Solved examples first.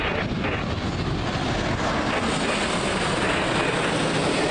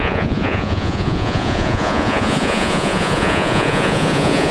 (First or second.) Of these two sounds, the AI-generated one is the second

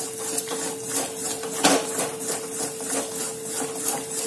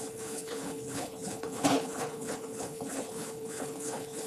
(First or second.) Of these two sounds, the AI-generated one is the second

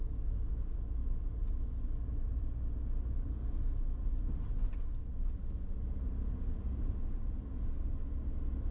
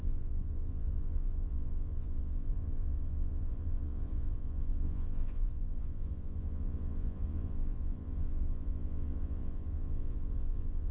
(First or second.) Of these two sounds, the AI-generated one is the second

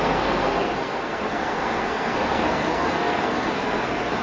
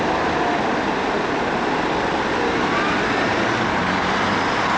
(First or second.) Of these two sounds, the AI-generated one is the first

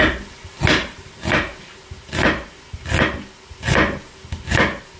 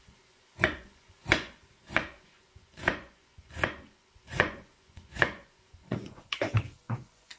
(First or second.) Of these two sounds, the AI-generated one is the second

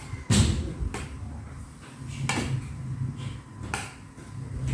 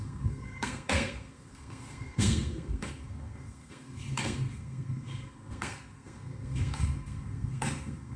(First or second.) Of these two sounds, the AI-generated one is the second